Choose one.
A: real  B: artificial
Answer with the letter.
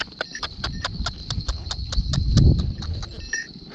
A